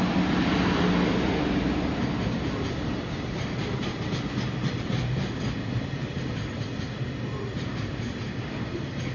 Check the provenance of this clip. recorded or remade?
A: recorded